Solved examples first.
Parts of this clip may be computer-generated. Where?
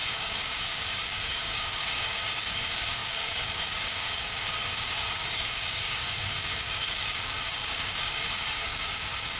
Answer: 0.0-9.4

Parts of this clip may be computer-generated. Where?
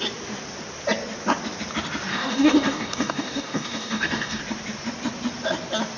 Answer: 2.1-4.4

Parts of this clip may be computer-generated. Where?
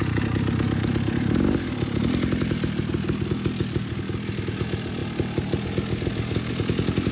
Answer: none